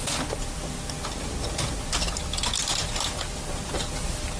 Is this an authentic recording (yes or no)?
yes